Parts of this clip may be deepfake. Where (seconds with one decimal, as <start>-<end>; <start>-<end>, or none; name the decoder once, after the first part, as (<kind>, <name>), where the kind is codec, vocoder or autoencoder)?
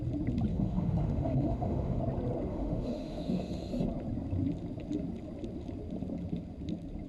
0.5-2.0 (autoencoder, DAC-VAE); 2.5-3.7